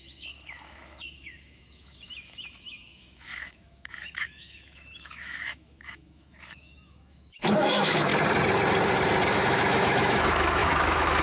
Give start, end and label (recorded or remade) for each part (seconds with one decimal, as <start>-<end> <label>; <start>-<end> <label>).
0.0-8.1 remade; 8.1-9.3 recorded; 9.3-11.2 remade